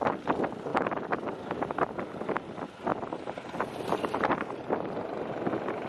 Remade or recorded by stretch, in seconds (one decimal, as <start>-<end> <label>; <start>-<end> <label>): 0.0-0.7 recorded; 0.7-2.0 remade; 2.0-5.9 recorded